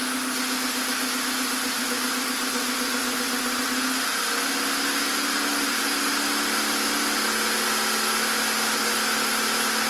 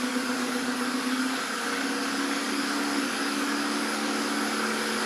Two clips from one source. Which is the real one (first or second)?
first